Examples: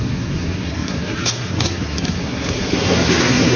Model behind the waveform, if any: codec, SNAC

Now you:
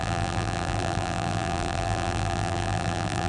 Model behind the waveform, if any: vocoder, BigVGAN v2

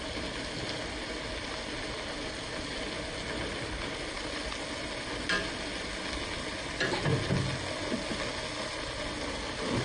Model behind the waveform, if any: none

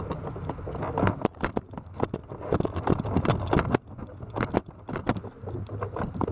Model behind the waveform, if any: none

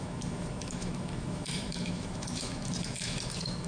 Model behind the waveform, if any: autoencoder, DAC-VAE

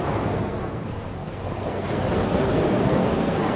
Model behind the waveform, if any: codec, SNAC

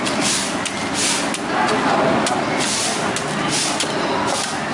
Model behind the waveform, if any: none